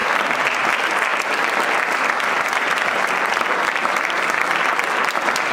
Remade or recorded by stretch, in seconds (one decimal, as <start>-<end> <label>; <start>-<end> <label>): 0.0-1.1 recorded; 1.1-4.4 remade; 4.4-5.5 recorded